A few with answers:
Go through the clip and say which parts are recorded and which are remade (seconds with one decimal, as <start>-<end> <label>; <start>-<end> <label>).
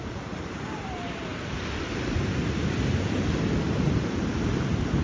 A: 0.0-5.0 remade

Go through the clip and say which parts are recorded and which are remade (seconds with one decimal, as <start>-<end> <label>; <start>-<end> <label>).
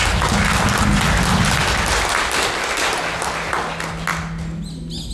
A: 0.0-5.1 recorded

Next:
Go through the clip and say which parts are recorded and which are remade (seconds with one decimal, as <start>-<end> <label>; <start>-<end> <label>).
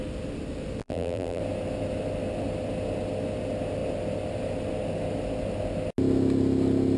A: 0.0-0.8 recorded; 0.8-1.4 remade; 1.4-7.0 recorded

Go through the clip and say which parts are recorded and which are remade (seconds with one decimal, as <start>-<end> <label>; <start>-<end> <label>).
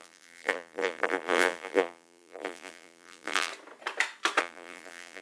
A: 0.0-3.5 remade; 3.5-4.4 recorded; 4.4-5.2 remade